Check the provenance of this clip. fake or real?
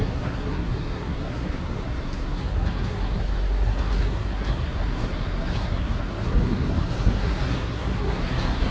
fake